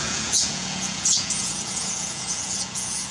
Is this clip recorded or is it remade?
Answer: remade